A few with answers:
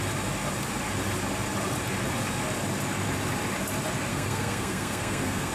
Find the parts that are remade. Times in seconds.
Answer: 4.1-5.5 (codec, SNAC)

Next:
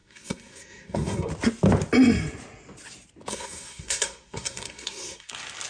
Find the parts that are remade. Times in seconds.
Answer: 0.0-1.3 (codec, SNAC); 3.3-5.3

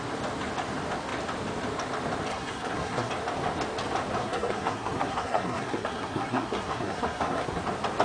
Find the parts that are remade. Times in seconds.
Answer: 2.3-3.1 (codec, SNAC); 4.2-7.6

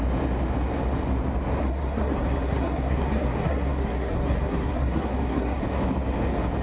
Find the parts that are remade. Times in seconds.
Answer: 1.6-5.6 (codec, SNAC)

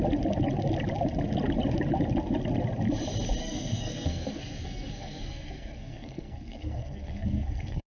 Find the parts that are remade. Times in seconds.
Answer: 3.4-8.0 (codec, SNAC)